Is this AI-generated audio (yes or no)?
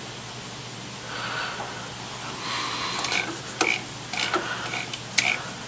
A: no